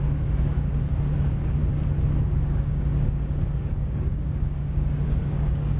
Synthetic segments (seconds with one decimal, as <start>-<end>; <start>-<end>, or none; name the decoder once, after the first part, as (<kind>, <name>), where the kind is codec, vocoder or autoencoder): 0.0-1.6 (codec, DAC); 2.2-5.8